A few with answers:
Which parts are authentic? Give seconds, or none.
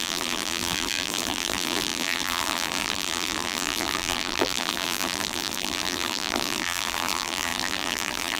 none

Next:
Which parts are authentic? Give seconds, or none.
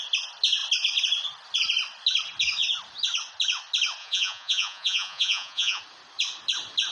0.0-4.0; 5.8-6.9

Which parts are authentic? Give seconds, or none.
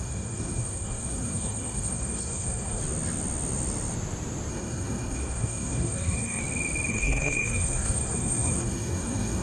2.8-4.5; 6.4-6.9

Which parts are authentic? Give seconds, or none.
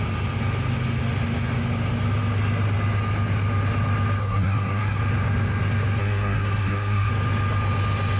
0.0-4.2; 5.0-6.0; 7.1-8.2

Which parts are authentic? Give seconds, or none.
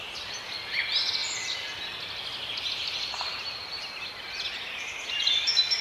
0.0-5.8